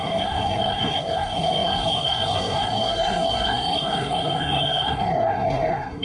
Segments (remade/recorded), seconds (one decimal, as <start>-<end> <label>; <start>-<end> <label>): 0.0-6.0 remade